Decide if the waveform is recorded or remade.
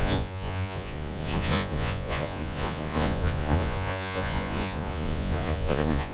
remade